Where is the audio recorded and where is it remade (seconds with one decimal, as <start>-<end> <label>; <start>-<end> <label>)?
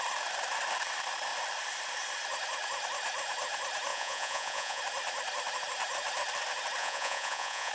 0.0-3.9 recorded; 3.9-4.8 remade; 4.8-6.8 recorded; 6.8-7.7 remade